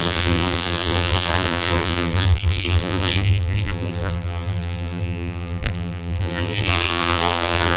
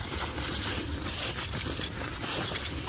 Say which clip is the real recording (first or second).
second